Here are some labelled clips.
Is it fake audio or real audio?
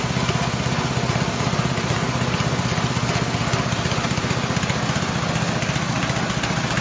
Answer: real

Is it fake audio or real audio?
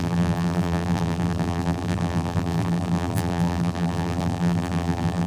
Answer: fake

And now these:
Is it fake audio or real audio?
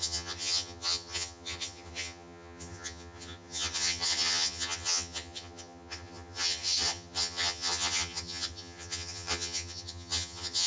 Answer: fake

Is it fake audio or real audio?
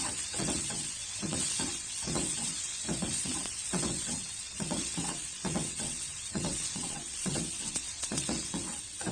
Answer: fake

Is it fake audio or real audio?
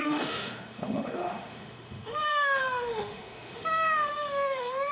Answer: fake